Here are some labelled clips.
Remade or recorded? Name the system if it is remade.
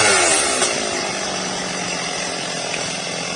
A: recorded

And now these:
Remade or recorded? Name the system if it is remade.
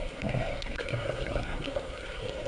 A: remade, codec, SNAC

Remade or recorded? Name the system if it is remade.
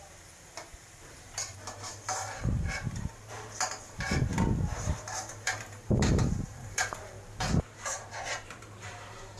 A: remade, vocoder, BigVGAN v2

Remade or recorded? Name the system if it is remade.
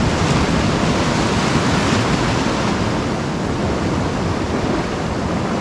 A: recorded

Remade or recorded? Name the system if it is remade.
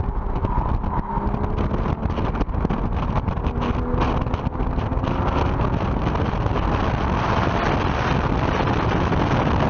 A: recorded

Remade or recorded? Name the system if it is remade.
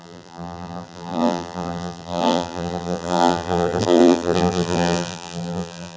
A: remade, vocoder, BigVGAN v2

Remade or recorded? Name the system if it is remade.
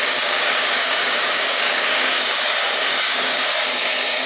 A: remade, codec, DAC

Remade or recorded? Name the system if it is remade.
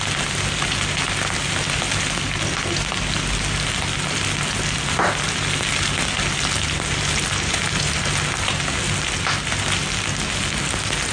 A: recorded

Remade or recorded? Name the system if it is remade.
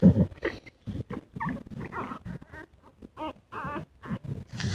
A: recorded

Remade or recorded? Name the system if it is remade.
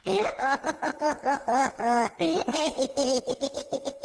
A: remade, codec, HILCodec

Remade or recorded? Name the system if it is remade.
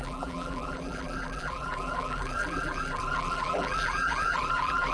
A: remade, vocoder, BigVGAN v2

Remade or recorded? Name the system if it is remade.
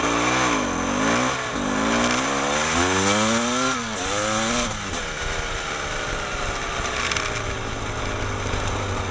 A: recorded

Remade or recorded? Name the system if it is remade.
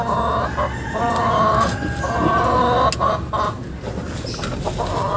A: recorded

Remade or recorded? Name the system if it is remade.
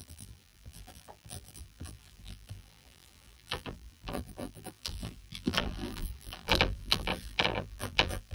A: remade, vocoder, BigVGAN v2